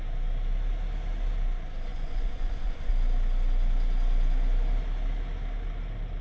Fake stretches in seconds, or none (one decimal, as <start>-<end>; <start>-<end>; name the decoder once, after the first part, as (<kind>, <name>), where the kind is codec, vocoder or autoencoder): 1.9-2.9 (vocoder, Vocos)